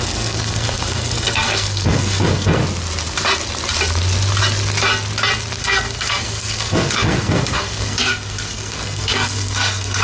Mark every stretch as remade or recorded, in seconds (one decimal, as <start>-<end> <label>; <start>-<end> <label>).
0.0-2.6 remade; 2.6-5.6 recorded; 5.6-10.0 remade